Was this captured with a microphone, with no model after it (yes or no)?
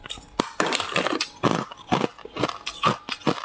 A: yes